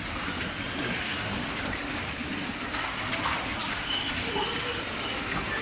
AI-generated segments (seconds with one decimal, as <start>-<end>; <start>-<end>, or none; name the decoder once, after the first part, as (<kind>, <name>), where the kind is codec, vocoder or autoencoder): none